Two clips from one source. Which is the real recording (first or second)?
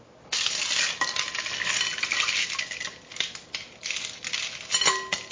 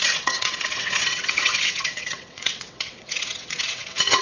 first